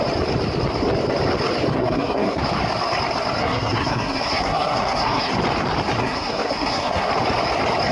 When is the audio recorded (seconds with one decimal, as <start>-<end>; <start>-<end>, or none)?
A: 0.0-1.7; 2.4-3.4; 5.3-6.0; 7.1-7.9